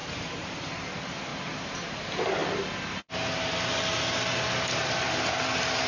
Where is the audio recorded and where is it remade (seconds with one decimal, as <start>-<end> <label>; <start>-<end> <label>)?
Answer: 0.0-0.6 remade; 0.6-1.3 recorded; 1.3-2.0 remade; 2.0-5.9 recorded